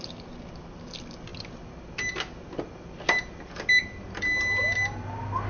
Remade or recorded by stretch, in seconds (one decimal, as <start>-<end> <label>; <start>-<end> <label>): 0.0-5.5 recorded